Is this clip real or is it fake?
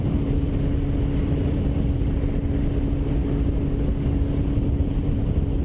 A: real